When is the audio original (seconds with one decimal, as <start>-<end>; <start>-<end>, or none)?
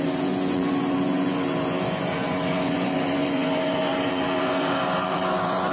none